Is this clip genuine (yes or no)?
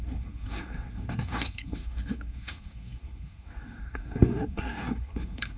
no